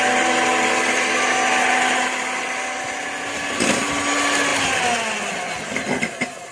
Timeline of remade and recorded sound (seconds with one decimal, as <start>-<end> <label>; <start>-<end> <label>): 0.0-6.5 recorded